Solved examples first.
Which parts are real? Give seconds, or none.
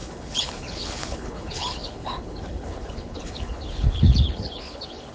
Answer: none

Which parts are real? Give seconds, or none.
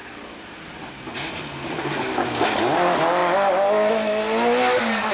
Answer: 0.0-5.1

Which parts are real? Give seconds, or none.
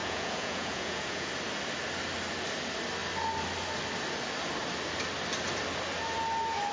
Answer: 1.3-6.7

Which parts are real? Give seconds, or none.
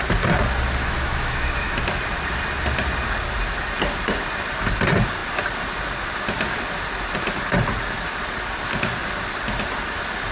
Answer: 0.0-0.8; 1.8-10.3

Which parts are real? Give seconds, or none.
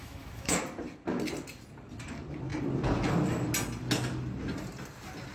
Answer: 0.6-5.3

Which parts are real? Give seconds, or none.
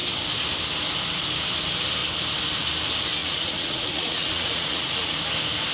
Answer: 0.0-3.2; 5.2-5.7